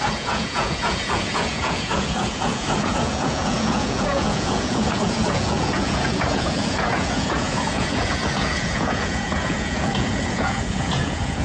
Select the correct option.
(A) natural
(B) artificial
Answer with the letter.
B